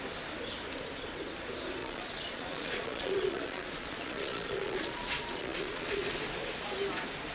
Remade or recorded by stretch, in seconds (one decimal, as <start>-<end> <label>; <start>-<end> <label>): 0.0-1.8 recorded; 1.8-6.2 remade; 6.2-7.3 recorded